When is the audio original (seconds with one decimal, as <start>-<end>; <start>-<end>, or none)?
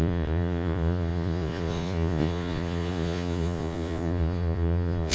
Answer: none